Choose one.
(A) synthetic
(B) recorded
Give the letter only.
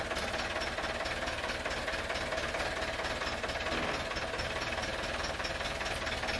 B